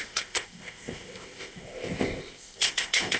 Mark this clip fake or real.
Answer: fake